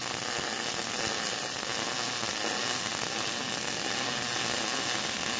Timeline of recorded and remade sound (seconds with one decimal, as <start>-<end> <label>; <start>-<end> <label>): 0.0-5.4 recorded